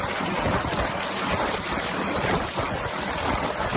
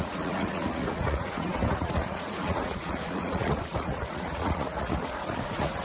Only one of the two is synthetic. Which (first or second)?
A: second